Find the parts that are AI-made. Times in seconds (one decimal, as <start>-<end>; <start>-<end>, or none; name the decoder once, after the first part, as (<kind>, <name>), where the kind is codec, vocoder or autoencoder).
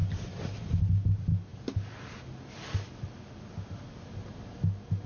none